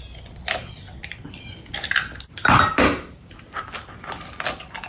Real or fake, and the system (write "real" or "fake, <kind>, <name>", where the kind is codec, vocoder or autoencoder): real